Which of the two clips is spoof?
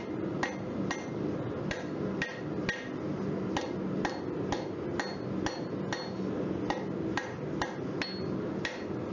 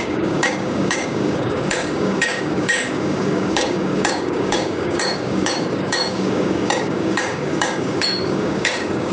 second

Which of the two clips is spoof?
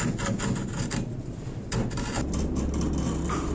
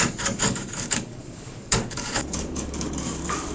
second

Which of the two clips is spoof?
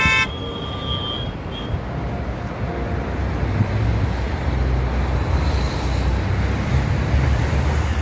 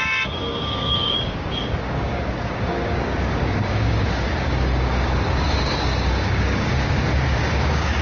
second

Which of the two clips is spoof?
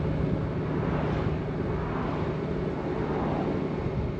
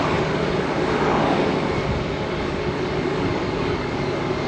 second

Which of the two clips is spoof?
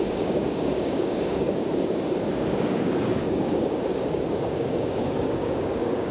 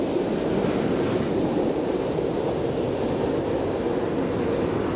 first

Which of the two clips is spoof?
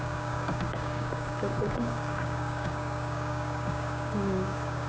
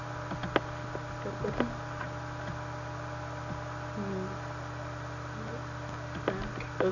first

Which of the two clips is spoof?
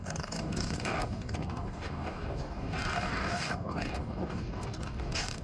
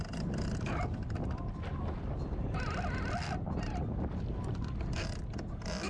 first